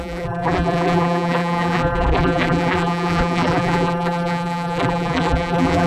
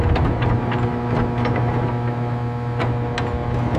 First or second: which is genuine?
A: second